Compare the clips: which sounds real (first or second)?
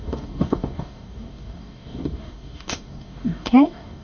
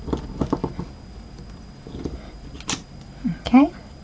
second